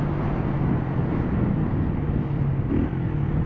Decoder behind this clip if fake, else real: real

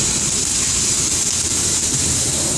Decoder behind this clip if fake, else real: real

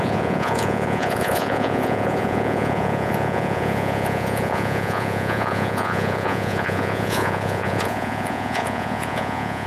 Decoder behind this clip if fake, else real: fake, vocoder, Vocos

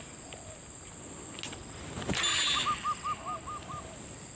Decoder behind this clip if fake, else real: real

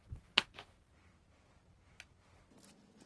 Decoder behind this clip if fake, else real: real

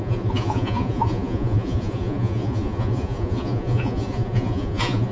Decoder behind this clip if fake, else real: fake, vocoder, Vocos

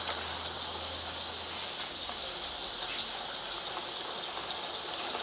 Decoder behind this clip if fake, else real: real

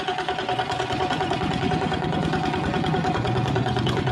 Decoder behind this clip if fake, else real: fake, vocoder, Vocos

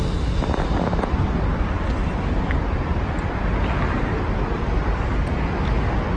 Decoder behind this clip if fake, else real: real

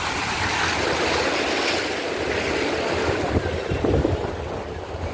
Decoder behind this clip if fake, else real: real